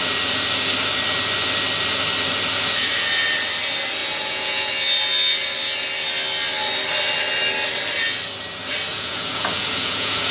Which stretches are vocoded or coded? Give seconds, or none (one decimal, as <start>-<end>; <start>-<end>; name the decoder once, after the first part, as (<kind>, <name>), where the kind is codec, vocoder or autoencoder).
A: 4.0-4.7 (vocoder, Vocos); 8.9-10.3